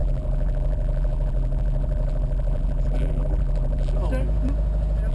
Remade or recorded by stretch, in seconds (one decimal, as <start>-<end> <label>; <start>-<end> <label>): 0.0-4.0 remade; 4.0-5.1 recorded